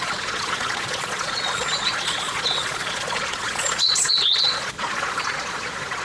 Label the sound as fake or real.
fake